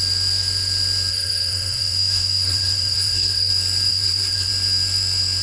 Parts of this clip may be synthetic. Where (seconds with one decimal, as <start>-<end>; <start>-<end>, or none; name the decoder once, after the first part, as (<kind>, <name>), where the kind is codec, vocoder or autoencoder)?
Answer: 1.1-3.5 (codec, SNAC); 3.9-4.5